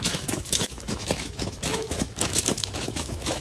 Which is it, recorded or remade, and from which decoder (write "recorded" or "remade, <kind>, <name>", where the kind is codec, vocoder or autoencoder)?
remade, autoencoder, DAC-VAE